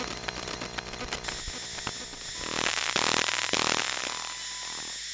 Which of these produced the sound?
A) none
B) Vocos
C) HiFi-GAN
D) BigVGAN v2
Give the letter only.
A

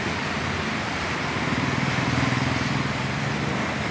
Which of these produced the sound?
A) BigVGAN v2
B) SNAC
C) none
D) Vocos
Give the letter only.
C